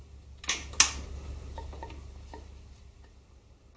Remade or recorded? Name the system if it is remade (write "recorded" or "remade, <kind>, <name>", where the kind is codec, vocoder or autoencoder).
recorded